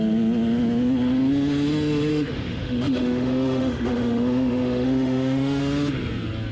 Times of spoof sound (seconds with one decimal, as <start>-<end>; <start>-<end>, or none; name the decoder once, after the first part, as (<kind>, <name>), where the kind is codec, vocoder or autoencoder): 2.1-5.6 (autoencoder, DAC-VAE)

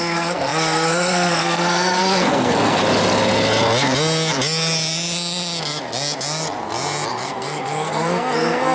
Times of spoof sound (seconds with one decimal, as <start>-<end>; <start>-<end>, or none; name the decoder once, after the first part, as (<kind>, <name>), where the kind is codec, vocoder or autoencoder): 0.0-2.8 (codec, SNAC); 7.1-8.7

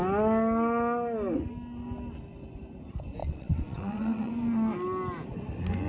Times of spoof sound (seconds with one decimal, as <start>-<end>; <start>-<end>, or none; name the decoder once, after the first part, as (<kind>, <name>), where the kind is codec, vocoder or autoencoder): 3.2-4.3 (vocoder, WaveNeXt)

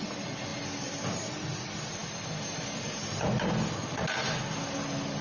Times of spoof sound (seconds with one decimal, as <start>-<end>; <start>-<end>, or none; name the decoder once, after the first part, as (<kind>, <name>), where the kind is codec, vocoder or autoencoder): none

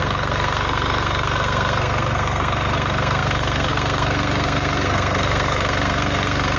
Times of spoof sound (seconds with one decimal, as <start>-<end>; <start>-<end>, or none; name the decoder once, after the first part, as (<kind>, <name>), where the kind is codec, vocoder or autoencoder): 0.0-6.6 (codec, SNAC)

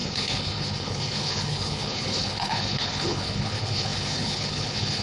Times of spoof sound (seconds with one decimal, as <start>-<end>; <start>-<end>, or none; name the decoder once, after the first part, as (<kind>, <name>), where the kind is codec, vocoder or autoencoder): 0.0-5.0 (codec, HILCodec)